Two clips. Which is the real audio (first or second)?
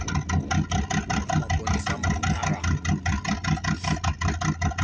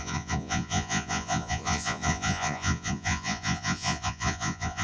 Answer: first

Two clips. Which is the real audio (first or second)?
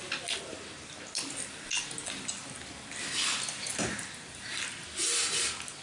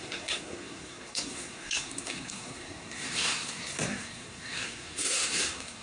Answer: first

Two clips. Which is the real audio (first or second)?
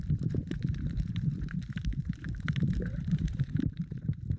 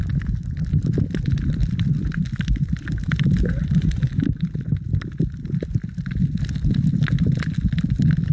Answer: second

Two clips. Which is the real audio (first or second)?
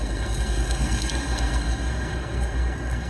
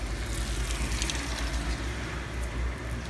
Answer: second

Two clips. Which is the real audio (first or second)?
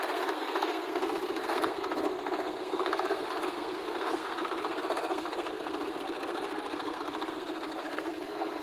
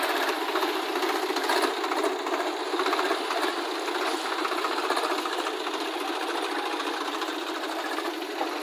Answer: second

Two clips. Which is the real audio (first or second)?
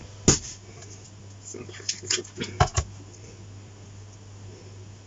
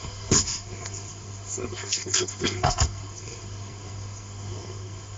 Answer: first